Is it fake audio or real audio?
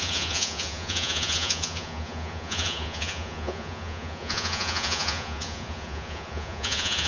fake